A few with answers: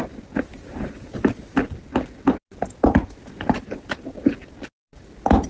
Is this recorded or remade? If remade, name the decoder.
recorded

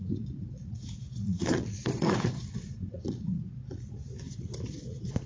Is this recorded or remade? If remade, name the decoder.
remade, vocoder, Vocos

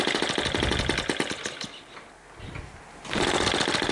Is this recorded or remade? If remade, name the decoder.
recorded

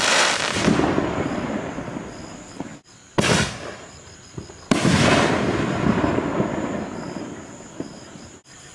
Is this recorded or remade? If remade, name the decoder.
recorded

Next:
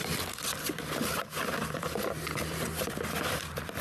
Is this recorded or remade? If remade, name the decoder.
remade, vocoder, BigVGAN v2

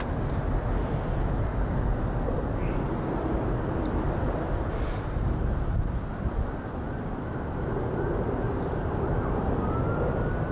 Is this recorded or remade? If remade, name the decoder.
recorded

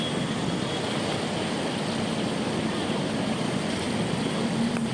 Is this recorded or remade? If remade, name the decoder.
recorded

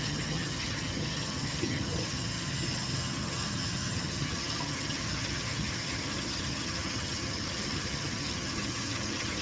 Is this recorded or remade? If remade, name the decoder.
remade, vocoder, HiFi-GAN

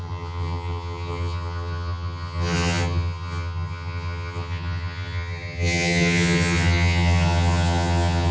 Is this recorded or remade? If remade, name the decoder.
remade, vocoder, HiFi-GAN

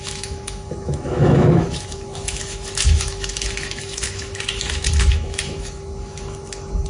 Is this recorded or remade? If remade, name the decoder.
remade, autoencoder, DAC-VAE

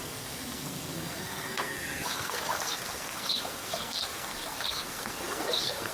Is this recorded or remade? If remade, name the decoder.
remade, codec, SNAC